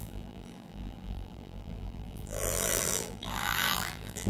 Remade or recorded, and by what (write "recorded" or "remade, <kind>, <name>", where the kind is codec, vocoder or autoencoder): remade, vocoder, BigVGAN v2